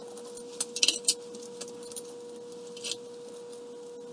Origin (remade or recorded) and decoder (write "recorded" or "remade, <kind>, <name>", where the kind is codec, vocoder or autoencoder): recorded